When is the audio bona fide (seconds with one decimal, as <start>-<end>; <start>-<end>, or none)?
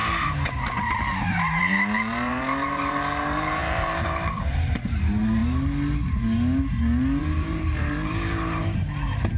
0.0-1.6; 5.4-7.2